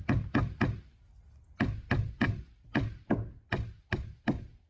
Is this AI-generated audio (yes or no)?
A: no